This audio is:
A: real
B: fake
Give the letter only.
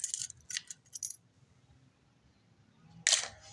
A